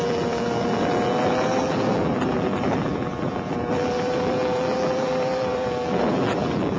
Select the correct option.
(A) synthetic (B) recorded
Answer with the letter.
A